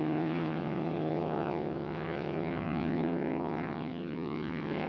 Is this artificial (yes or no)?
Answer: yes